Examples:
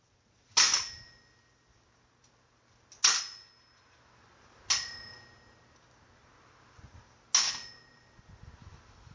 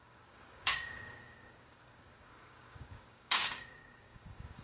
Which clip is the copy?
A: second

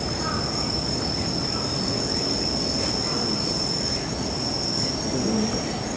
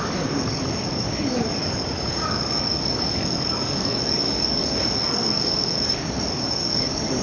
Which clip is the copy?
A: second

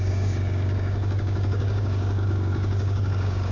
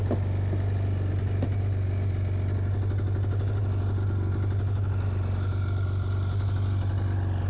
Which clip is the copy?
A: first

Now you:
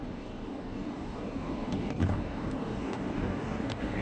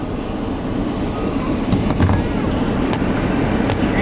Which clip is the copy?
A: first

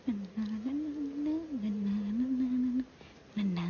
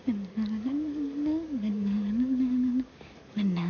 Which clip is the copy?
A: second